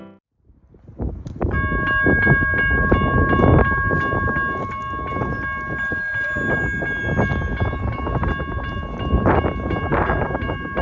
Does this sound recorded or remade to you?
recorded